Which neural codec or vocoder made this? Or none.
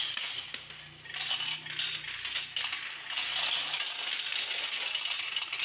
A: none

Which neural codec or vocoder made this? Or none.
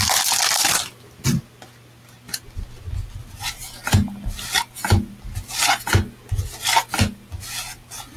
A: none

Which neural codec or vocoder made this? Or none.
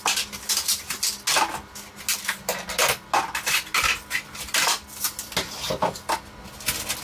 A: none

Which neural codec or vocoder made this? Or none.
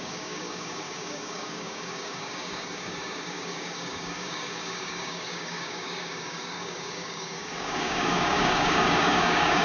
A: codec, DAC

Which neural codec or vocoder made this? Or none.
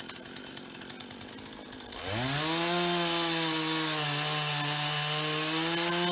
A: none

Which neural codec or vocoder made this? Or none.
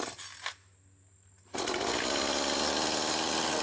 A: none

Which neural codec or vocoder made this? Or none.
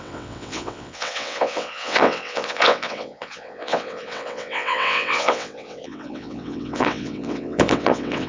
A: vocoder, WaveNeXt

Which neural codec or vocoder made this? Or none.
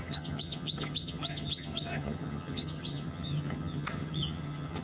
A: vocoder, HiFi-GAN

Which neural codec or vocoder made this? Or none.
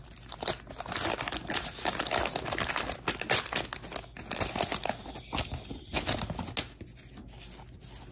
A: none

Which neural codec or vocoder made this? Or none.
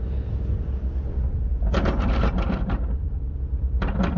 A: vocoder, BigVGAN v2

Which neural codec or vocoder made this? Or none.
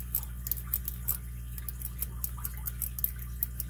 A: none